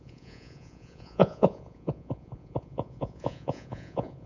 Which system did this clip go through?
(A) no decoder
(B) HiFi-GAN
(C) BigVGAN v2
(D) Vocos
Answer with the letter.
D